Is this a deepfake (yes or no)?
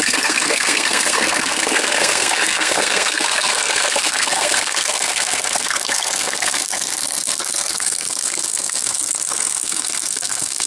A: yes